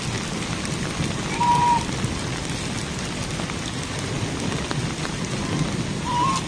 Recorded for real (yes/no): yes